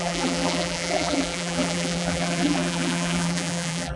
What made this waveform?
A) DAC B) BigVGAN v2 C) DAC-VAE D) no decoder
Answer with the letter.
B